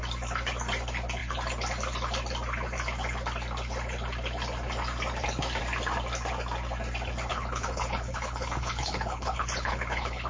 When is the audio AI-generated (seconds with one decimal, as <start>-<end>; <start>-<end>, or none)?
7.3-10.3